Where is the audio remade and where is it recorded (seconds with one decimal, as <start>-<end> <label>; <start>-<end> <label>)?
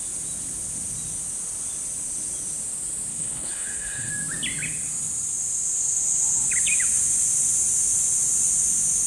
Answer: 0.0-3.1 recorded; 3.1-4.1 remade; 4.1-9.1 recorded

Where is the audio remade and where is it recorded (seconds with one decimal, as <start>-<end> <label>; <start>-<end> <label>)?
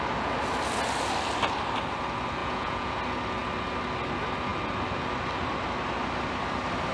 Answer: 0.0-2.4 recorded; 2.4-3.0 remade; 3.0-6.9 recorded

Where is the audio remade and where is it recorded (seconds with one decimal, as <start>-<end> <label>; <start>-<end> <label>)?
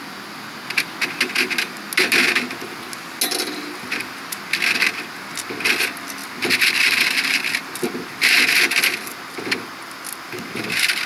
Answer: 0.0-11.1 recorded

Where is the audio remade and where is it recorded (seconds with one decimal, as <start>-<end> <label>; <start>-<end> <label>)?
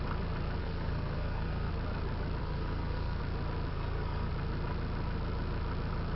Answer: 0.0-0.6 recorded; 0.6-1.7 remade; 1.7-2.4 recorded; 2.4-3.2 remade; 3.2-3.7 recorded; 3.7-4.3 remade; 4.3-6.2 recorded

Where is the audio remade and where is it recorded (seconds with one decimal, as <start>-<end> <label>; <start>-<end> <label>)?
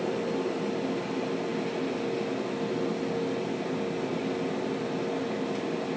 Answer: 0.0-6.0 recorded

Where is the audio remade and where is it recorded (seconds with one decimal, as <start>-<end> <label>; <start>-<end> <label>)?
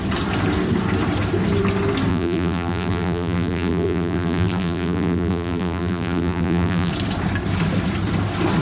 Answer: 0.0-2.1 recorded; 2.1-6.9 remade; 6.9-8.6 recorded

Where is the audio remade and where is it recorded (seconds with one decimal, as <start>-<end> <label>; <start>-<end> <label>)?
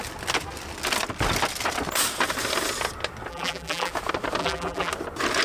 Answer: 0.0-3.3 recorded; 3.3-3.9 remade; 3.9-4.4 recorded; 4.4-4.9 remade; 4.9-5.4 recorded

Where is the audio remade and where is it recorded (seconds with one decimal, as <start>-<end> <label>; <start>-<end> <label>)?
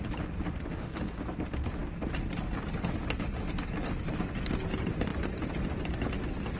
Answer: 0.0-0.7 recorded; 0.7-1.2 remade; 1.2-6.6 recorded